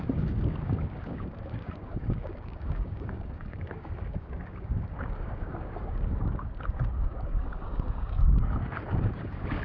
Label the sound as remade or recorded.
remade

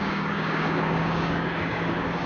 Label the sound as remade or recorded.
remade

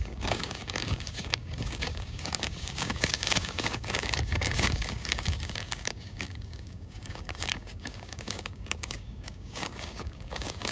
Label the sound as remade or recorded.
remade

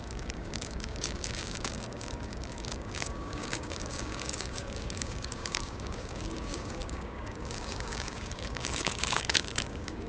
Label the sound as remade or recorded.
remade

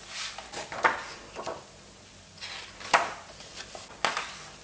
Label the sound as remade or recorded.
recorded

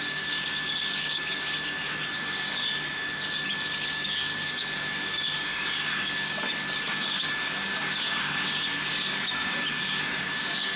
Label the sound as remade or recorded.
remade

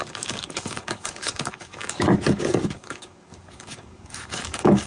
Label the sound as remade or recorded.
remade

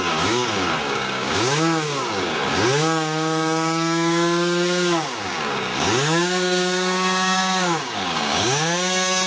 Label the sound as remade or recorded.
remade